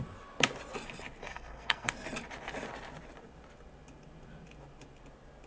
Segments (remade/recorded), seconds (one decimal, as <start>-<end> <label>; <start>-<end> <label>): 0.0-1.2 recorded; 1.2-1.9 remade; 1.9-5.5 recorded